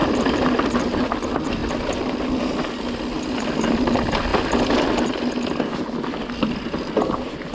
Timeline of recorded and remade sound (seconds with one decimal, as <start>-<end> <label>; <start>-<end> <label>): 0.0-1.1 remade; 1.1-1.6 recorded; 1.6-2.5 remade; 2.5-4.3 recorded; 4.3-6.9 remade; 6.9-7.5 recorded